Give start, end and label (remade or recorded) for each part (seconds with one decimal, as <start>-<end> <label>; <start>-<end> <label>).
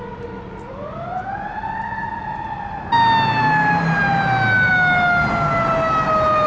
0.0-6.5 recorded